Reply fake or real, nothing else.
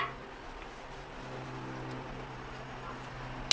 real